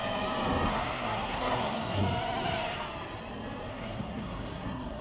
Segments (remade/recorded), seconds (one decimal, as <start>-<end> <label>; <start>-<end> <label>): 0.0-0.7 recorded; 0.7-2.0 remade; 2.0-3.7 recorded; 3.7-5.0 remade